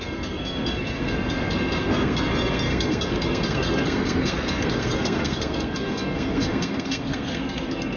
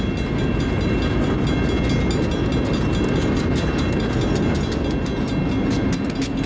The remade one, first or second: first